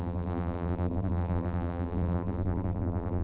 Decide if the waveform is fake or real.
fake